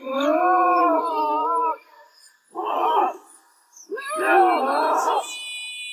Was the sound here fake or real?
real